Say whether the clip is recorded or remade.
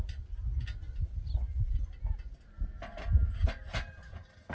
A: recorded